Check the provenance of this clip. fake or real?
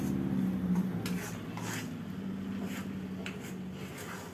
real